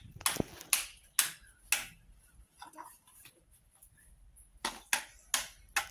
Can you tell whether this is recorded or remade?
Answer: recorded